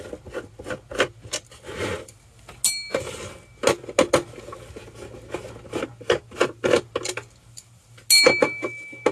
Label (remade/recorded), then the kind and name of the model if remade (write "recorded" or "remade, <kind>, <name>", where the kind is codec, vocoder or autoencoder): recorded